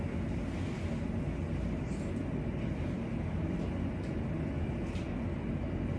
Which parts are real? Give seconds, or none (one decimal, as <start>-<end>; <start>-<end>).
0.0-6.0